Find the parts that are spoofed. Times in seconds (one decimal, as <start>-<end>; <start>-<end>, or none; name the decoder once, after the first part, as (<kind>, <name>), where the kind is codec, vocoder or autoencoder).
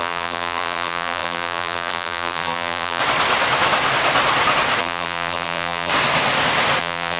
0.0-3.0 (vocoder, BigVGAN v2); 4.8-5.9; 6.8-7.2